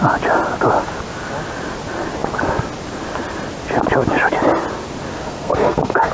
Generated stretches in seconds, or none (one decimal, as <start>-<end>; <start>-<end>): 5.1-6.1